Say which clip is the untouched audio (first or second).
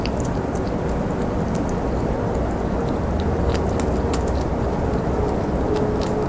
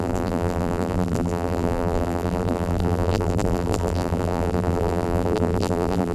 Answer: first